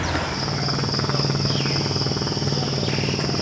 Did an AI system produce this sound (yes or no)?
no